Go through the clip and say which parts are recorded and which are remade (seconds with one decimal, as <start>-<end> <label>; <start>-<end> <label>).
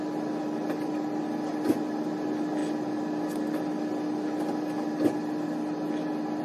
0.0-6.4 recorded